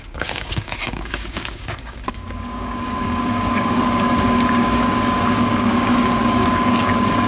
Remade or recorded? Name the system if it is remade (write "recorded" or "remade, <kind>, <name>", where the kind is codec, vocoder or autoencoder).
remade, codec, DAC